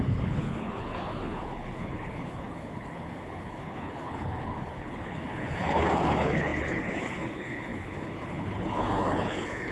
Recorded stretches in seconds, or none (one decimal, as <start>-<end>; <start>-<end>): none